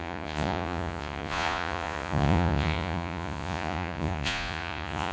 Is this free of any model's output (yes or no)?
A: no